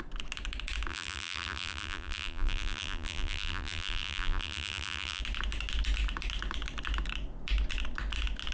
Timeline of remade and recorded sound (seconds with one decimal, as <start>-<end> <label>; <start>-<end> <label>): 0.0-0.9 recorded; 0.9-5.2 remade; 5.2-8.5 recorded